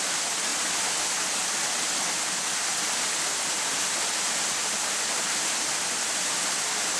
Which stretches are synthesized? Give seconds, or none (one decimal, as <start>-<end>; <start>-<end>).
none